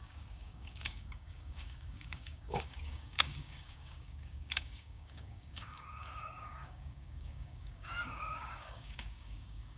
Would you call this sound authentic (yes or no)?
no